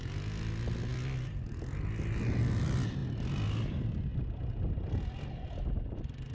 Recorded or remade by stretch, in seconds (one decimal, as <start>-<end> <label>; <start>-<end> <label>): 0.0-6.3 recorded